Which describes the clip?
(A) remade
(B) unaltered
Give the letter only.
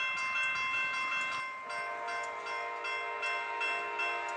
B